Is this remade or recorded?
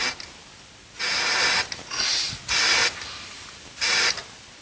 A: recorded